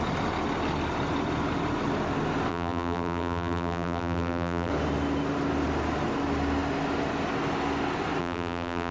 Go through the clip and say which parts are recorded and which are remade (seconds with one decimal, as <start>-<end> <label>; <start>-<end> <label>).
0.0-2.5 recorded; 2.5-4.7 remade; 4.7-8.2 recorded; 8.2-8.9 remade